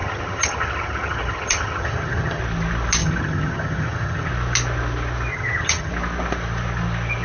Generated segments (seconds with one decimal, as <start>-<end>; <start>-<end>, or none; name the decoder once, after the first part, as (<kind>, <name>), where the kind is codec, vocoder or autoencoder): 0.0-2.4 (vocoder, HiFi-GAN); 3.0-4.3; 5.3-5.9